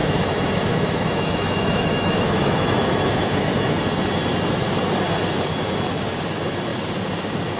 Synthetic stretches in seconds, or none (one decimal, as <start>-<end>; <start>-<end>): 0.0-3.8